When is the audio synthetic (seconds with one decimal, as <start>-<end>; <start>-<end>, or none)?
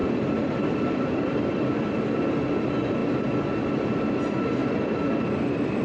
0.0-2.3; 4.6-5.8